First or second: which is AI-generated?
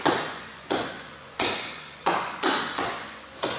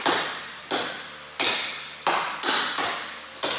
first